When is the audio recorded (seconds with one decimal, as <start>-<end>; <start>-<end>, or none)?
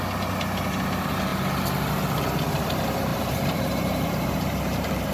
0.0-3.1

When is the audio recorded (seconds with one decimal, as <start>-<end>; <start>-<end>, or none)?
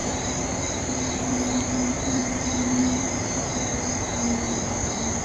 3.5-4.6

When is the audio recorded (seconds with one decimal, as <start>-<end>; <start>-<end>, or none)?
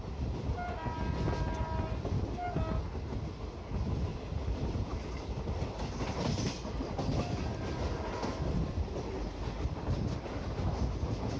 0.0-4.1; 5.5-7.5; 8.9-11.4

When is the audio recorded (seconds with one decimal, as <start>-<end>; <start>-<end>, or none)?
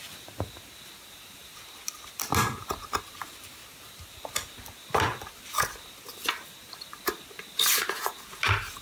0.0-8.8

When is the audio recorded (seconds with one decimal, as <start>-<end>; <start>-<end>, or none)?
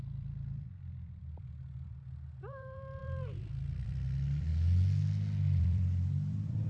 4.5-5.6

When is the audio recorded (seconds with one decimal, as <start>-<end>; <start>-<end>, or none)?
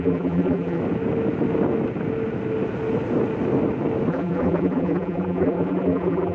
0.8-4.1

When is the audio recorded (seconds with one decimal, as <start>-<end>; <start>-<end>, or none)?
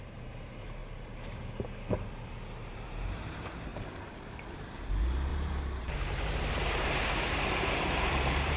0.8-2.7; 3.7-4.5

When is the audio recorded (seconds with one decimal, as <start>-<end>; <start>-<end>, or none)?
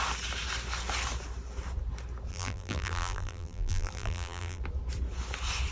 0.0-2.3; 4.6-5.7